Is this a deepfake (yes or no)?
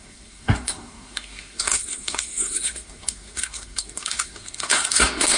yes